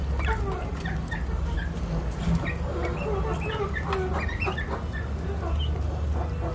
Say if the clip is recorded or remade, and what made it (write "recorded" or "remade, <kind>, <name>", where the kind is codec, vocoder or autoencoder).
recorded